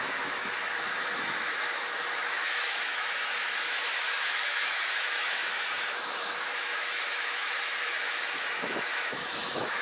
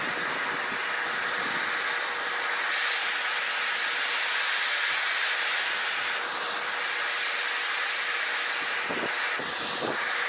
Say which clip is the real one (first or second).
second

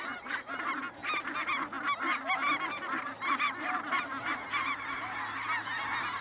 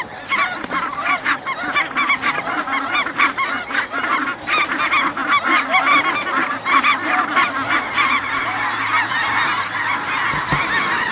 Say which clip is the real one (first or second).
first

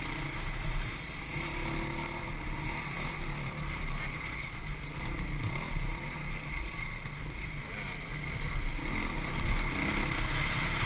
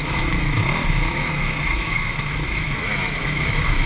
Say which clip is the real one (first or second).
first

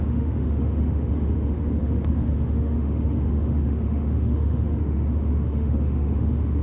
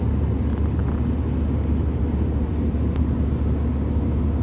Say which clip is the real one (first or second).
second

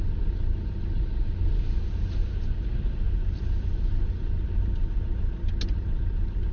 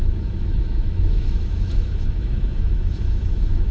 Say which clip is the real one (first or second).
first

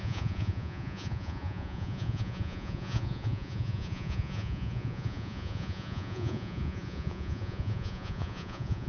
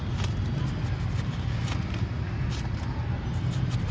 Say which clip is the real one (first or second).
second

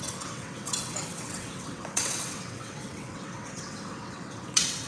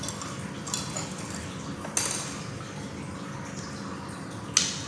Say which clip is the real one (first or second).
second